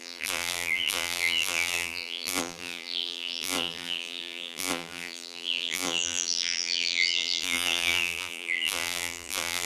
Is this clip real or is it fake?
fake